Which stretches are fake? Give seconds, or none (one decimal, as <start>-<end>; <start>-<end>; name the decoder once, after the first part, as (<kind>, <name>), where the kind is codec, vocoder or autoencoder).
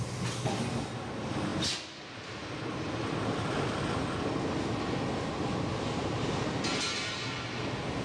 none